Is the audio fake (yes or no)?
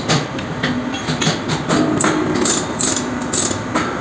no